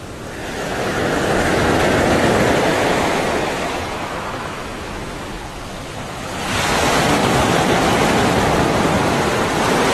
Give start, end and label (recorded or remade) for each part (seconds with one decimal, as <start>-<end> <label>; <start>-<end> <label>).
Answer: 0.0-0.4 recorded; 0.4-1.2 remade; 1.2-2.7 recorded; 2.7-5.4 remade; 5.4-9.9 recorded